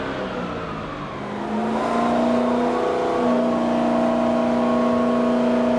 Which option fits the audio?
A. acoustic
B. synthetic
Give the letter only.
A